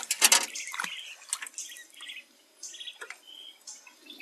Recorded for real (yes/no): yes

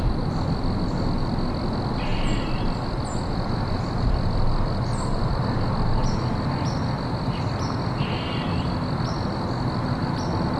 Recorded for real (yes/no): yes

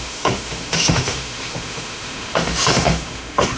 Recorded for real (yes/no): no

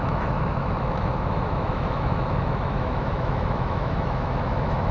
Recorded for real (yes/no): no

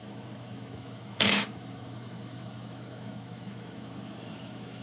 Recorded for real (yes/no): no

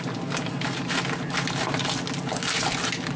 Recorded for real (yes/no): yes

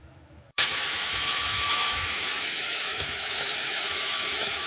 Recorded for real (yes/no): no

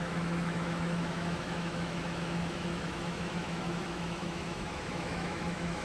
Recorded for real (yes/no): no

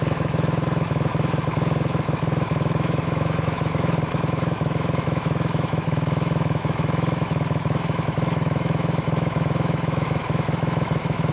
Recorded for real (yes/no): no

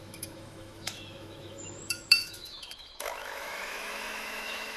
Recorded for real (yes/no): no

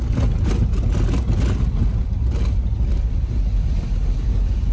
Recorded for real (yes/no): yes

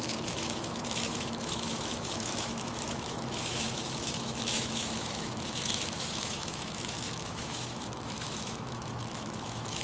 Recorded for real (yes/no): no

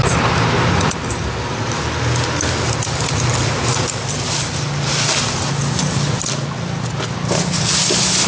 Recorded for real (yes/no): yes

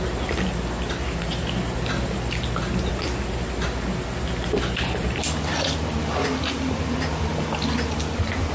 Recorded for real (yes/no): yes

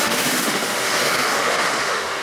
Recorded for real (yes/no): no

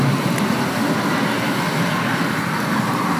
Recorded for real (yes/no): yes